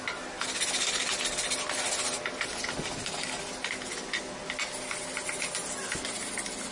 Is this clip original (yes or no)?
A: yes